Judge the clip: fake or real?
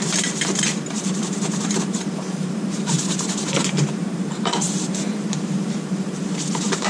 fake